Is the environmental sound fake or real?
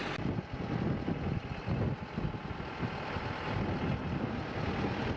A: real